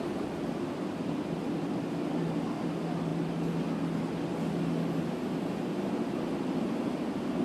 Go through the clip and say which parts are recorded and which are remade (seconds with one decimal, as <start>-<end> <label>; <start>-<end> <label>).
0.0-7.4 recorded